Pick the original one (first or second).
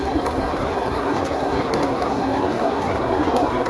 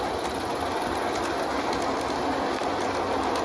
second